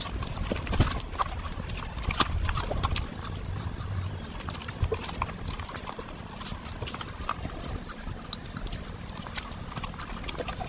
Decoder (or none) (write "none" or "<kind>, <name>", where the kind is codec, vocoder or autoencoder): none